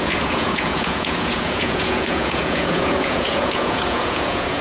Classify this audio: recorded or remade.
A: remade